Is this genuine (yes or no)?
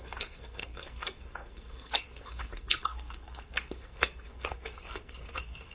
no